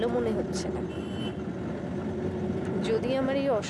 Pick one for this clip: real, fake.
real